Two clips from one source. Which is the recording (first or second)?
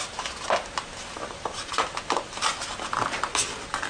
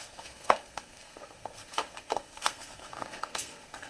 first